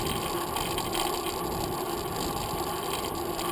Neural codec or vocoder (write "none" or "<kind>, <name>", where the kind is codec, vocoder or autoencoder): none